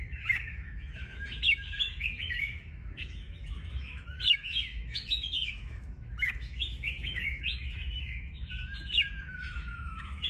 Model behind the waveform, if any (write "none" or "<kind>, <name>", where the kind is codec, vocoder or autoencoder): autoencoder, DAC-VAE